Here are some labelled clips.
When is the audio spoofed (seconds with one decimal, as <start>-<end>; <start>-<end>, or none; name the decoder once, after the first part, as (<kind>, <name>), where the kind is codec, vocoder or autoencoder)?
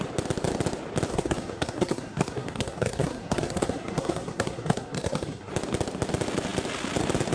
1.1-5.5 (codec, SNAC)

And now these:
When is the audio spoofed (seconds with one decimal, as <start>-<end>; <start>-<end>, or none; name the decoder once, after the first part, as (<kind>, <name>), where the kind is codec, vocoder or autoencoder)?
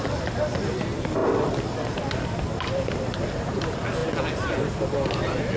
none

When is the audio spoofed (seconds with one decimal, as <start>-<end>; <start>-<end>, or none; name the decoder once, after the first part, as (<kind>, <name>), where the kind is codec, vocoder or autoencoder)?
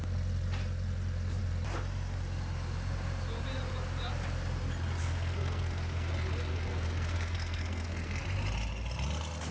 5.0-6.1 (codec, SNAC); 6.5-8.2